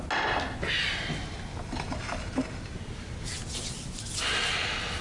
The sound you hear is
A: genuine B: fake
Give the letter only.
A